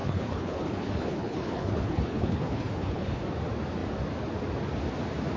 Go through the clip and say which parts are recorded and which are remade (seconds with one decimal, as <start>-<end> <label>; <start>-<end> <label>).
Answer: 0.0-3.2 remade; 3.2-5.4 recorded